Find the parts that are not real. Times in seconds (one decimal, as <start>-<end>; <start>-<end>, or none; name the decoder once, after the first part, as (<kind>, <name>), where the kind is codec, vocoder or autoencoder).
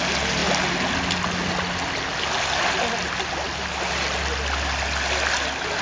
none